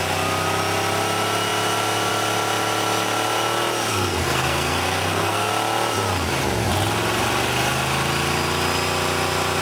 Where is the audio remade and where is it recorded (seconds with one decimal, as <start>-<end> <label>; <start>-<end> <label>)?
0.0-3.9 recorded; 3.9-5.5 remade; 5.5-9.6 recorded